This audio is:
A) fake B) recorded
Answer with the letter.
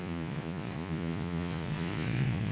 A